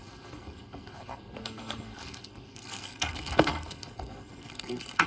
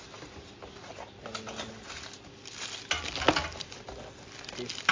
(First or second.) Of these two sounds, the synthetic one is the first